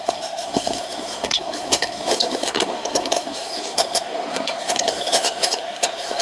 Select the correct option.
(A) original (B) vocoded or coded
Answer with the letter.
B